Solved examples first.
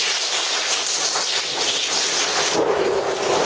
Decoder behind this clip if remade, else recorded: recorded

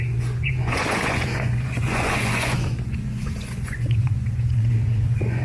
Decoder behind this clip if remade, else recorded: remade, vocoder, Vocos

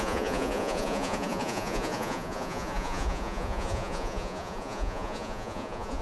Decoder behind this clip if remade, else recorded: remade, vocoder, Vocos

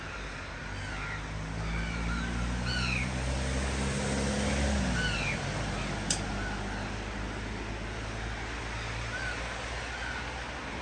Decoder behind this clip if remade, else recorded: recorded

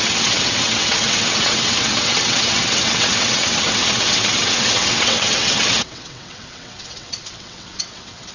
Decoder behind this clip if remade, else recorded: remade, vocoder, WaveNeXt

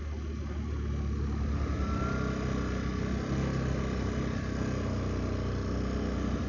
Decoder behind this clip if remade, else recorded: recorded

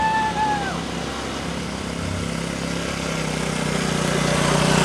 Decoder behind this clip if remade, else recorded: recorded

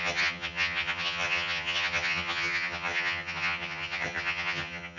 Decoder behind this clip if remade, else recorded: remade, vocoder, HiFi-GAN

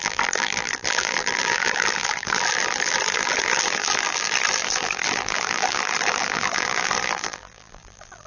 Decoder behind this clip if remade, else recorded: remade, vocoder, BigVGAN v2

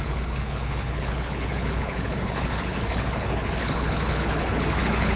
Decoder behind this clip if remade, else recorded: remade, codec, HILCodec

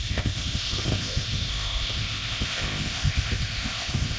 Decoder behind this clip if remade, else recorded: remade, codec, ZipCodec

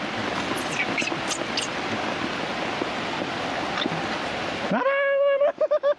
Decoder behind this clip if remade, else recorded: recorded